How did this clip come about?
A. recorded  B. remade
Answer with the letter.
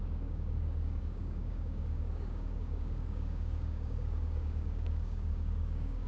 B